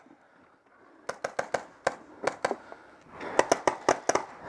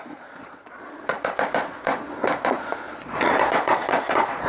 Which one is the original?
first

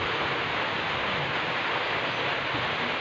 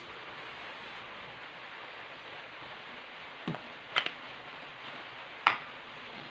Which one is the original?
first